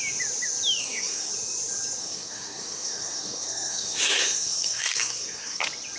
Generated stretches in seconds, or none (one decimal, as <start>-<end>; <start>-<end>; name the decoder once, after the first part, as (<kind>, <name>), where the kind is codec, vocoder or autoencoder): 0.8-1.3 (codec, SNAC); 2.0-5.6

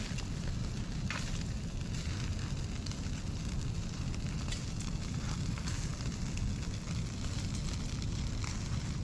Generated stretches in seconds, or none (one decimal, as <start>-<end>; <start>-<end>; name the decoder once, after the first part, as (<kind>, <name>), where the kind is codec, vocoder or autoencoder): none